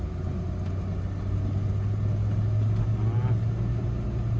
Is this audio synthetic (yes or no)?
no